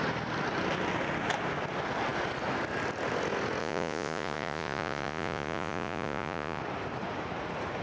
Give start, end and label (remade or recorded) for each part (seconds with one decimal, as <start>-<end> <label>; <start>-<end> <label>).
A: 0.0-3.6 recorded; 3.6-6.6 remade; 6.6-7.8 recorded